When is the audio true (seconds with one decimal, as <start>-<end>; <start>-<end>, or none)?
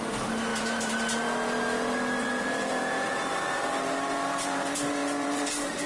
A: 0.5-2.2